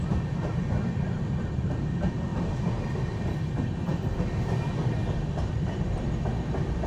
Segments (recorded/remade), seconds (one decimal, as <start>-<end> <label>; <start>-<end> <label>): 0.0-6.9 recorded